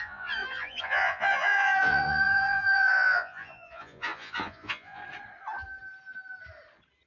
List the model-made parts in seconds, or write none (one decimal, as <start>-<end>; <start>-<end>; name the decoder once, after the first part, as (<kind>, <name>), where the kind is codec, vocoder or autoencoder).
0.0-5.0 (vocoder, Vocos)

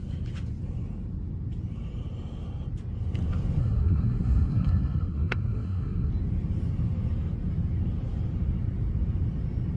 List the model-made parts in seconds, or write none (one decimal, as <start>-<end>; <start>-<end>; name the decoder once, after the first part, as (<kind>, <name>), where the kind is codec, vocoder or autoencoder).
3.6-6.1 (codec, SNAC)

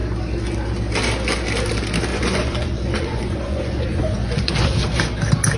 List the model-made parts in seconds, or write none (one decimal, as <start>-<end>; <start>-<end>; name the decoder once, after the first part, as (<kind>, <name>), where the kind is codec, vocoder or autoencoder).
2.1-4.5 (vocoder, Vocos)

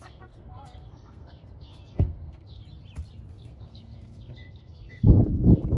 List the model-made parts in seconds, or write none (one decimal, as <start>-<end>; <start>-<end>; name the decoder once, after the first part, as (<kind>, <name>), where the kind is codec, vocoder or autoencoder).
0.0-2.6 (codec, SNAC); 3.3-5.8

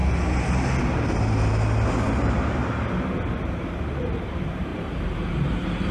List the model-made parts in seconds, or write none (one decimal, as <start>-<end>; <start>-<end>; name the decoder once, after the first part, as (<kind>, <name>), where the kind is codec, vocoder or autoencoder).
1.9-2.6 (vocoder, BigVGAN v2); 3.4-5.9

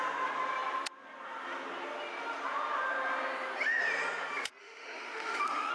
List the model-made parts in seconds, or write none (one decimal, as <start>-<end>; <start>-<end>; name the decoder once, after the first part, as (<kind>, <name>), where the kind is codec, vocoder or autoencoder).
4.6-5.7 (autoencoder, DAC-VAE)